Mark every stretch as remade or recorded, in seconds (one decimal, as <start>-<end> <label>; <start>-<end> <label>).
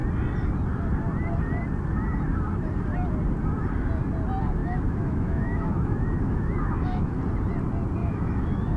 0.0-4.6 recorded; 4.6-7.2 remade; 7.2-8.0 recorded; 8.0-8.8 remade